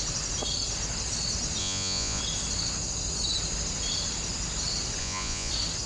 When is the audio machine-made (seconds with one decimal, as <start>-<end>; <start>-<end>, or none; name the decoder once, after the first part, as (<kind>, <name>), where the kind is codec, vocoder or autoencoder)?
1.6-2.2 (vocoder, Vocos); 5.0-5.5